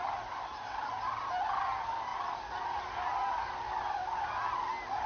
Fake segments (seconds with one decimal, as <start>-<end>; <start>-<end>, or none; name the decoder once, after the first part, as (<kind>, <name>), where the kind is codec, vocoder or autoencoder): none